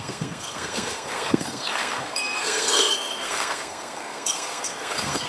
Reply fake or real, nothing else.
fake